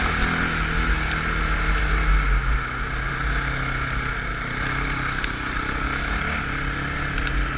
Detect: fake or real real